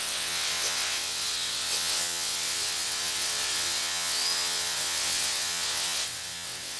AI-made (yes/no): yes